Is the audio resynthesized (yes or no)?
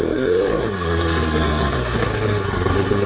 yes